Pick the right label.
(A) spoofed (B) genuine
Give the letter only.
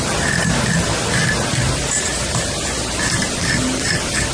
B